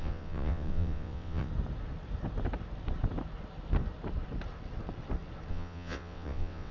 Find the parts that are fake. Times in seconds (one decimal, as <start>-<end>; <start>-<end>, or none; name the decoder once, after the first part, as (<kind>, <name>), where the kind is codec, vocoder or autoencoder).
0.0-1.5 (vocoder, WaveNeXt); 5.5-6.7